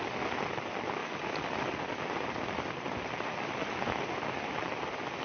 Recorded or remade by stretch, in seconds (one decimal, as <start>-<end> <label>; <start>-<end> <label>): 0.0-5.2 recorded